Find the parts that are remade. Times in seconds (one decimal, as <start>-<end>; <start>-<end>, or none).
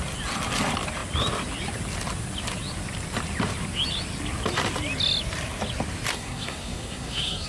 6.1-7.5